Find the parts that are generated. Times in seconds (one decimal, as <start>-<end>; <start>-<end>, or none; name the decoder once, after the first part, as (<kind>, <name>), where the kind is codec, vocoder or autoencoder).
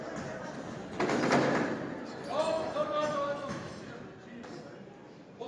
2.4-3.8 (autoencoder, DAC-VAE)